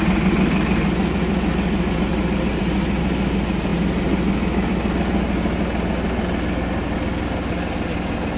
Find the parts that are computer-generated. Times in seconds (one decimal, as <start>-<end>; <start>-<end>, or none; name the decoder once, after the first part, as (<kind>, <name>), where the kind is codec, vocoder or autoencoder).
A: none